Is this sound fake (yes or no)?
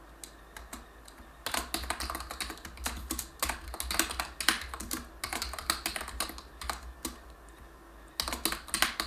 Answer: no